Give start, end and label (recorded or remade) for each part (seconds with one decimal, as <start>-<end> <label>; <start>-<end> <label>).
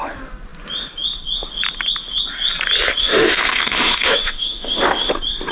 0.0-3.0 recorded; 3.0-5.1 remade; 5.1-5.5 recorded